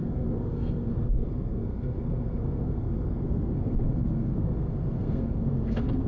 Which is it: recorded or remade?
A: remade